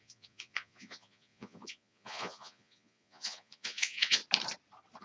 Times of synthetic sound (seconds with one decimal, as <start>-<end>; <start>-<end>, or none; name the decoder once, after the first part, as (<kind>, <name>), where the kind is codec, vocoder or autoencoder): 0.0-4.2 (vocoder, Vocos)

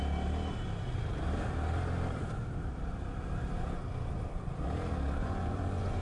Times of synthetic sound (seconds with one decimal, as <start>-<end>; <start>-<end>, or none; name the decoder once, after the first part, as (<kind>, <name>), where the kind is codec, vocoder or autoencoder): 5.2-6.0 (vocoder, Vocos)